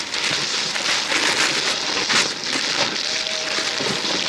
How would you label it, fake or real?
real